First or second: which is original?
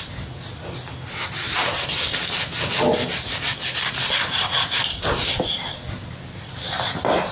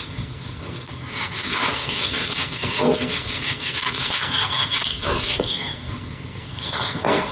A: first